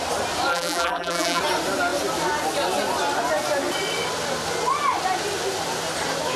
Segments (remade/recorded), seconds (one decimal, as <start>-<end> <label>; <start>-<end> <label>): 0.0-0.5 recorded; 0.5-1.4 remade; 1.4-6.4 recorded